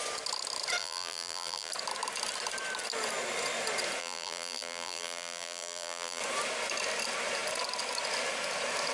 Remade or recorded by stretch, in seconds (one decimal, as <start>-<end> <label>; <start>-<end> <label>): 0.0-0.8 recorded; 0.8-1.7 remade; 1.7-4.0 recorded; 4.0-6.2 remade; 6.2-8.9 recorded